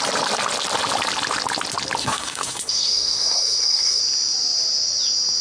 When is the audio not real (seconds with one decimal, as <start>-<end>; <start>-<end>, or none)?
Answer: 2.0-4.0